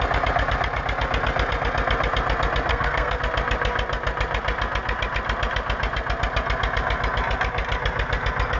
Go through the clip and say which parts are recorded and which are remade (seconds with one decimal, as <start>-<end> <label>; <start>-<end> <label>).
0.0-2.7 recorded; 2.7-3.2 remade; 3.2-8.6 recorded